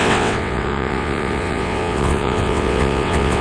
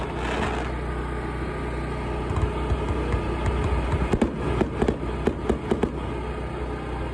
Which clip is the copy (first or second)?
first